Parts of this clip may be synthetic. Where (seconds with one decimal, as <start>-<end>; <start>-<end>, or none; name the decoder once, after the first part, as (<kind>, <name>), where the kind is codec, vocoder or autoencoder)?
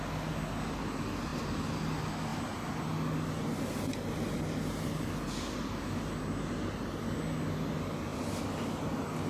none